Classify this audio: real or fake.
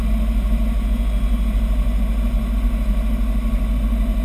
real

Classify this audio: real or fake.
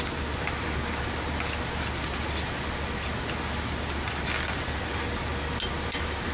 real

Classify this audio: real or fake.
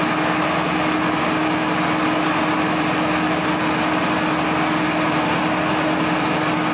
real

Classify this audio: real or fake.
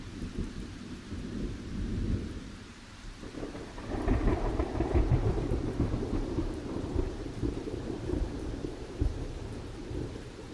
fake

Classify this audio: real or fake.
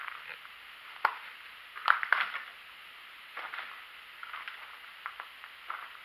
real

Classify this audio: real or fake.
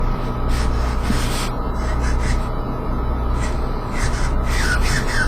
real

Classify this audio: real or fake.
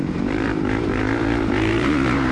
fake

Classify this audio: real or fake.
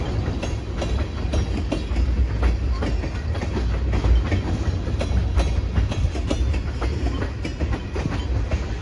real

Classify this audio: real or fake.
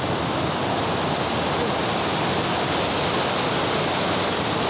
real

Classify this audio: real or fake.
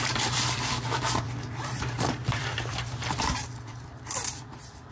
fake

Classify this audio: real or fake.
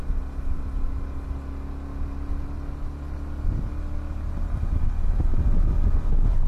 real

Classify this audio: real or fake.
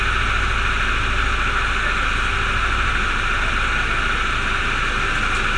real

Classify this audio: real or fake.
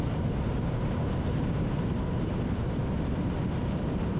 fake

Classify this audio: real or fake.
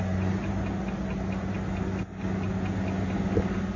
real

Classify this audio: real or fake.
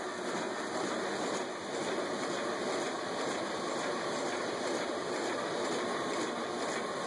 fake